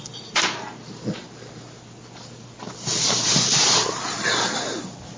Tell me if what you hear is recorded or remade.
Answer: recorded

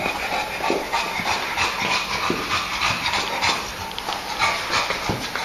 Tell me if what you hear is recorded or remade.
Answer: recorded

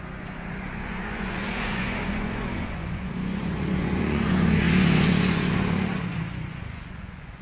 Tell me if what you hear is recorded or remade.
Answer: remade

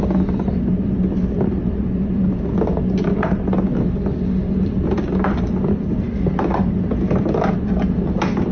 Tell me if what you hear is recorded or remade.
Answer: recorded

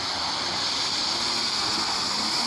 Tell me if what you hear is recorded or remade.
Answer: recorded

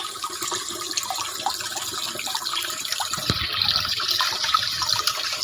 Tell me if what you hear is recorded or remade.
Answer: recorded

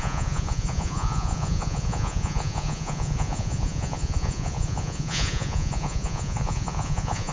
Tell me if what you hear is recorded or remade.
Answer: remade